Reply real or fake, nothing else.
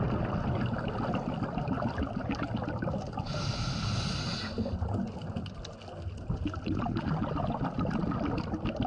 real